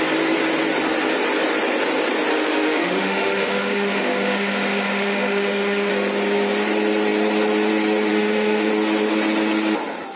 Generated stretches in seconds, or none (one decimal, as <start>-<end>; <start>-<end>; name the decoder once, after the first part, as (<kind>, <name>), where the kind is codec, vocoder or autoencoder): 2.3-5.9 (autoencoder, DAC-VAE); 8.1-8.7